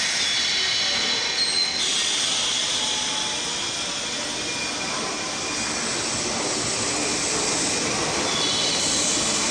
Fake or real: real